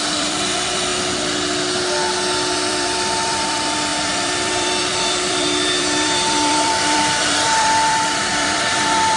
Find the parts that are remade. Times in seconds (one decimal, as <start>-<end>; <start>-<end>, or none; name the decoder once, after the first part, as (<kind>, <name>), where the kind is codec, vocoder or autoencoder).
0.0-0.9 (vocoder, BigVGAN v2); 2.5-9.2